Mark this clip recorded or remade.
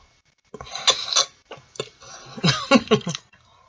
recorded